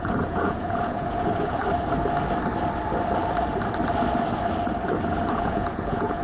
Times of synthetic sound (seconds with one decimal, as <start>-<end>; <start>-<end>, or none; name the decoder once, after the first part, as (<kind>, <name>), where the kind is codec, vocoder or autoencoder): 0.0-1.6 (vocoder, Vocos); 5.3-6.2